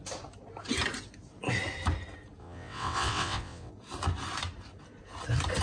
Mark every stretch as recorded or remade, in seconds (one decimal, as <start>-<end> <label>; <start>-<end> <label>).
0.0-2.4 recorded; 2.4-3.7 remade; 3.7-5.6 recorded